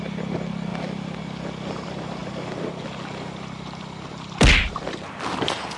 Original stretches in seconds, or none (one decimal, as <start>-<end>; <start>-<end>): 0.0-0.7; 1.2-2.2; 4.1-4.6; 5.3-5.8